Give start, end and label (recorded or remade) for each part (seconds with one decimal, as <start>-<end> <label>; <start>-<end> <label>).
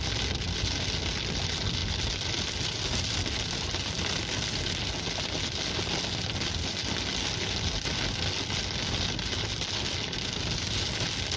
0.0-11.4 recorded